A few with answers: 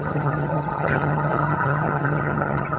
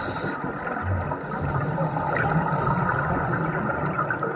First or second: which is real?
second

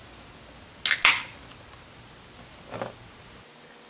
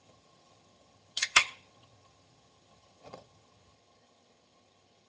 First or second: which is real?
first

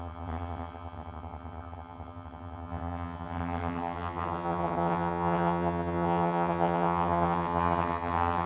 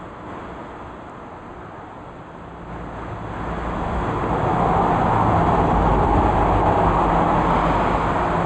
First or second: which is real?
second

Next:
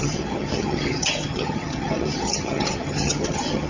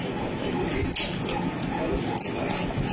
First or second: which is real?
second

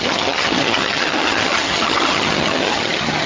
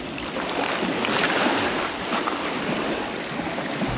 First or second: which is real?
second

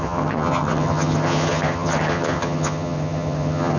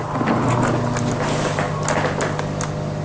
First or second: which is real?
second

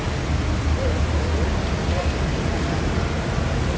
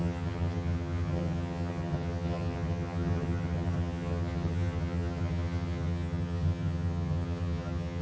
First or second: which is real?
first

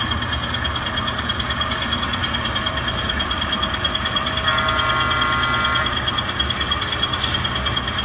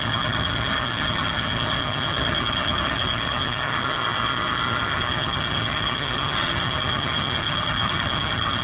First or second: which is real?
first